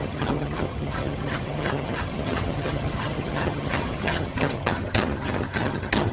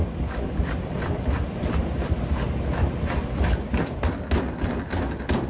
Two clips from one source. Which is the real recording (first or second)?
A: second